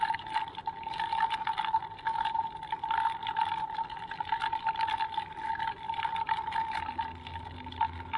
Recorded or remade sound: recorded